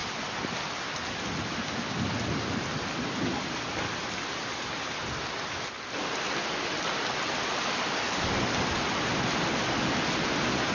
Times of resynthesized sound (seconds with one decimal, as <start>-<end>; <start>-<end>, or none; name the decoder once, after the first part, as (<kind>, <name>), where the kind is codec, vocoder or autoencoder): none